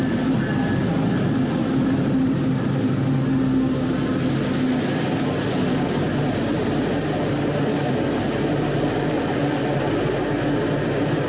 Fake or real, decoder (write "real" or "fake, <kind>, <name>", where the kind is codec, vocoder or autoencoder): real